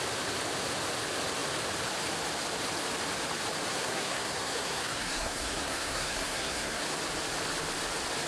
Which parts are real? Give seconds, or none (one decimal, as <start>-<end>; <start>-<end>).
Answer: 0.0-3.7; 6.8-8.3